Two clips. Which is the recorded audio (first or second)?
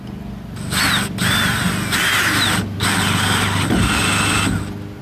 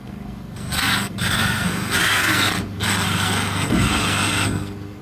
first